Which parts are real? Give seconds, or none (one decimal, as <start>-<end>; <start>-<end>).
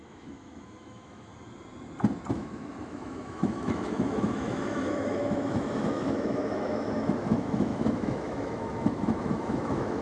1.3-2.3